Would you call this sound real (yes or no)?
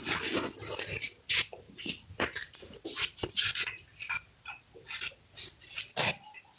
yes